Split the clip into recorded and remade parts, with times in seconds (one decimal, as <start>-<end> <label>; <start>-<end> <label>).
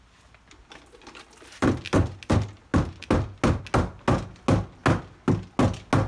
0.0-6.1 recorded